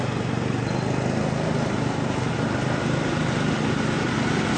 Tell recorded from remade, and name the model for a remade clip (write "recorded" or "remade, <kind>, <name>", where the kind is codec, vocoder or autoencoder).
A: recorded